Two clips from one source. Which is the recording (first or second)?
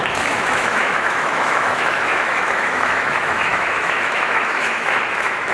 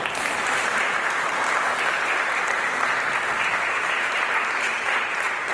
second